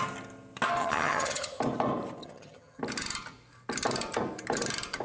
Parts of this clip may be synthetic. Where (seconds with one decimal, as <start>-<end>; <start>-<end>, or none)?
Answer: 0.8-1.6; 2.2-2.8